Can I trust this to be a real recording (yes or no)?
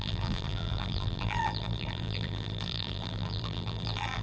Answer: no